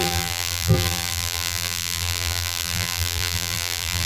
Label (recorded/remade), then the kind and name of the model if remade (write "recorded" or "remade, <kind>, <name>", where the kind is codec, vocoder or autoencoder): remade, vocoder, BigVGAN v2